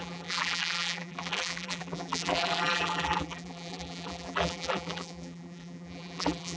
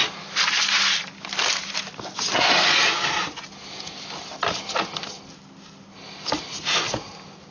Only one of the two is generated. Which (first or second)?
first